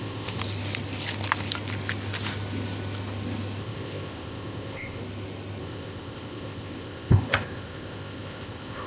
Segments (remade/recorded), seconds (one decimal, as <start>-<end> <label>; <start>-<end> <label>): 0.0-0.4 remade; 0.4-3.6 recorded; 3.6-5.0 remade; 5.0-5.6 recorded; 5.6-8.9 remade